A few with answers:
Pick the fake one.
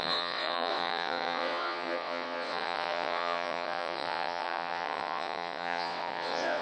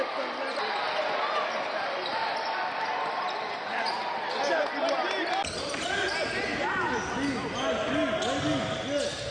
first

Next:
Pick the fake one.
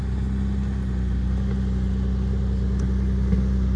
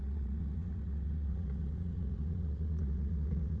second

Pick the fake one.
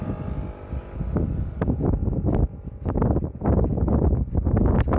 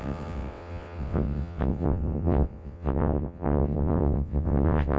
second